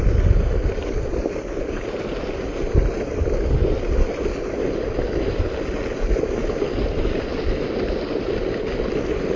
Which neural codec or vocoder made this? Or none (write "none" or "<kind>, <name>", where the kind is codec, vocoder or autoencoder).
none